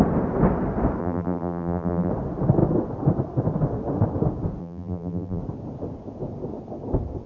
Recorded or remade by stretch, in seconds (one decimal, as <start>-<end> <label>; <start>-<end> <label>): 0.0-1.0 recorded; 1.0-2.1 remade; 2.1-4.6 recorded; 4.6-5.4 remade; 5.4-7.3 recorded